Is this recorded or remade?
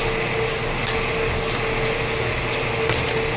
recorded